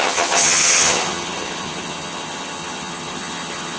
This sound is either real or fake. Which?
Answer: fake